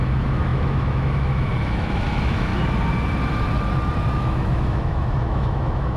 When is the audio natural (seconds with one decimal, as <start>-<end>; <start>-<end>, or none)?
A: 2.5-4.1